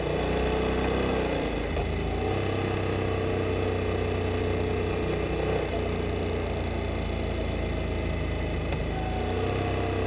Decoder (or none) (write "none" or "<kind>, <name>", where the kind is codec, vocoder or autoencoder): none